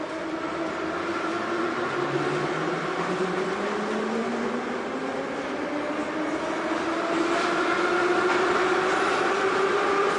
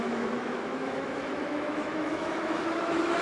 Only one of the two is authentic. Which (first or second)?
first